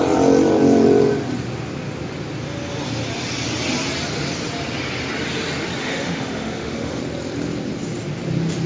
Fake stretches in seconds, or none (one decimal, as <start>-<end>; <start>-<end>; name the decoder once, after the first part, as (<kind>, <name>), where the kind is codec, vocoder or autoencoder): 5.8-7.0 (autoencoder, DAC-VAE)